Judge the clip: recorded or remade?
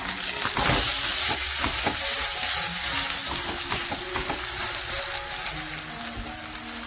recorded